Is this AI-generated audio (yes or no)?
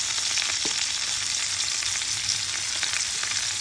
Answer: no